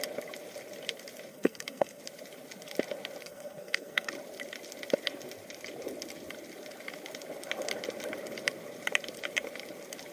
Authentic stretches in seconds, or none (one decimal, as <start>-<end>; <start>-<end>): 0.0-1.3; 2.0-3.2; 4.1-10.1